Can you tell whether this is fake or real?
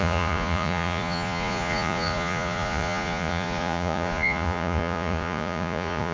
fake